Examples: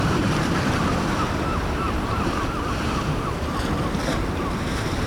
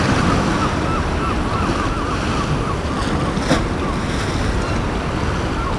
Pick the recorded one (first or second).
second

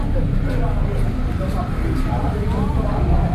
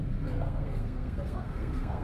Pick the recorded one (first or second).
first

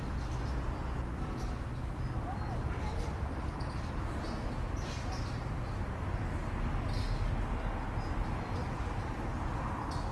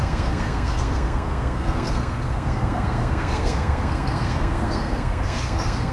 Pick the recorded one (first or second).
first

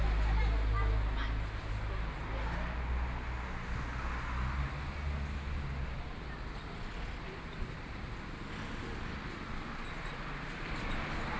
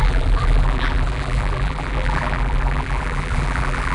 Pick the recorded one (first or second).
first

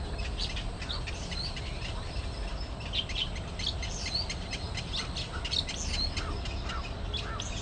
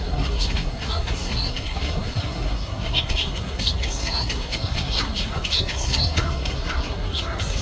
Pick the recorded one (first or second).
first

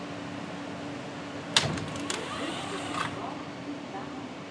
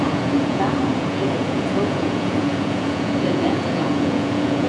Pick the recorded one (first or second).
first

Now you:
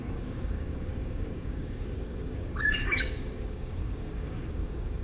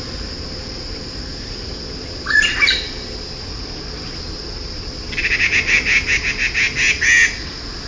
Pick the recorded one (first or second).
second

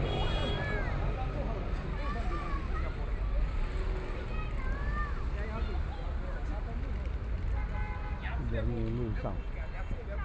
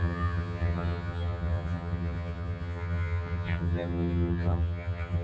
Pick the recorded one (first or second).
first